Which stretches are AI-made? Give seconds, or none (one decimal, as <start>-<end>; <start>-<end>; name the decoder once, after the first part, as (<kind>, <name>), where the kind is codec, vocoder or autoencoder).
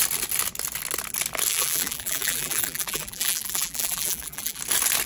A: 1.5-4.6 (vocoder, BigVGAN v2)